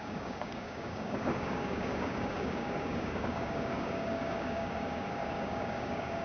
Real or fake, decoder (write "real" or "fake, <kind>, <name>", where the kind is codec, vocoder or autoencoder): fake, codec, DAC